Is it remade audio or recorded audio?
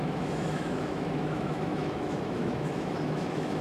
remade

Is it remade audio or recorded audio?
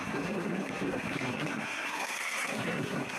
remade